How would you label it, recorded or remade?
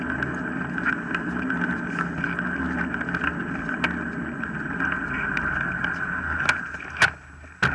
recorded